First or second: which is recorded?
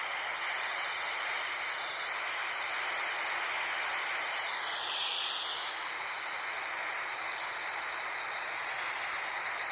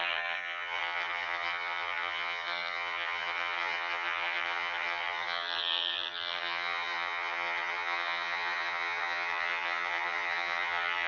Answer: first